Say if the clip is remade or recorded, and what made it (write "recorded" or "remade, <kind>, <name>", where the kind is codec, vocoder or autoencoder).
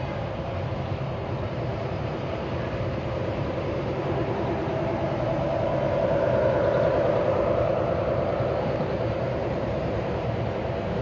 remade, vocoder, BigVGAN v2